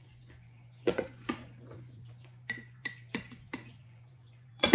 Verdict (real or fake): fake